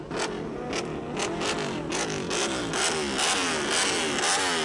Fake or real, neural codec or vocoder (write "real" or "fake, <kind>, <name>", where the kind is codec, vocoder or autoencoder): real